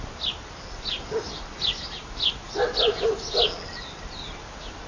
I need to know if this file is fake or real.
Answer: real